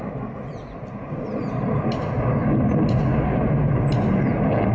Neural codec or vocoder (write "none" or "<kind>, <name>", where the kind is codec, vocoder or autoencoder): none